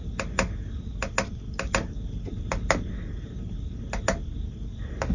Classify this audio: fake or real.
real